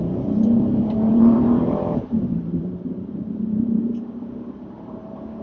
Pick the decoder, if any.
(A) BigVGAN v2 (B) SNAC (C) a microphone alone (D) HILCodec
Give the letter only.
A